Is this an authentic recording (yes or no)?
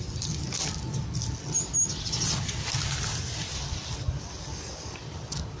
yes